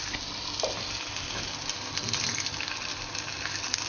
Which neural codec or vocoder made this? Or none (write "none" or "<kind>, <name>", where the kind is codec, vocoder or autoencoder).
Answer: none